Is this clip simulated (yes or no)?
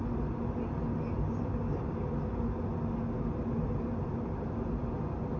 no